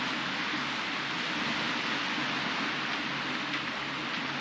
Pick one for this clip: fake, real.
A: real